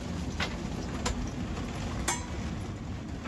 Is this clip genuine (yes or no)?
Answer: yes